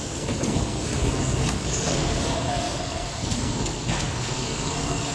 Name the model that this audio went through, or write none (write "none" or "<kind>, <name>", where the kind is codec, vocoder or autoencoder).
codec, SNAC